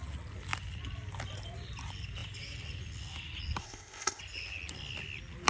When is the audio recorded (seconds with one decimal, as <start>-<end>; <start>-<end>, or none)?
0.0-3.6; 4.2-5.5